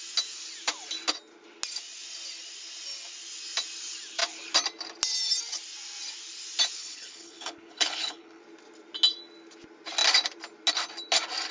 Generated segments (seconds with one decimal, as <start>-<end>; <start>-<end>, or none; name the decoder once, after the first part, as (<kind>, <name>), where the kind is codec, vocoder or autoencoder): 6.8-8.4 (codec, HILCodec)